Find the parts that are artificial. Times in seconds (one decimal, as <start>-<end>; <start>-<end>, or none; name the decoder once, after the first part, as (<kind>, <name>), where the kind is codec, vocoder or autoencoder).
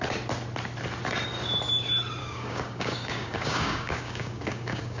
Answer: 2.2-5.0 (codec, DAC)